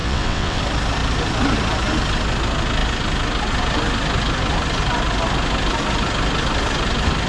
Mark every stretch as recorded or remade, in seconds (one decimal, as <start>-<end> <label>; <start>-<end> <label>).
0.0-0.6 remade; 0.6-7.3 recorded